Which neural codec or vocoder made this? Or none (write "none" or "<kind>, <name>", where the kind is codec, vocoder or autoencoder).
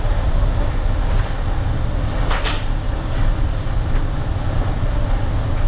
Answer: none